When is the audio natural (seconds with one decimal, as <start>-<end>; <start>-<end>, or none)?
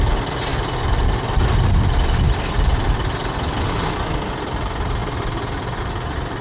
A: 0.0-6.4